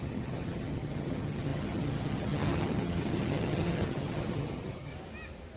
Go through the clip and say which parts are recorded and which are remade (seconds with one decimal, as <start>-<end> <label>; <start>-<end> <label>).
0.0-4.9 remade; 4.9-5.6 recorded